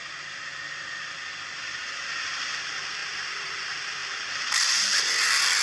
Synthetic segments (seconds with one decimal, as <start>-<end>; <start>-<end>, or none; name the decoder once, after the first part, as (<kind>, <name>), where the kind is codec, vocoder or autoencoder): none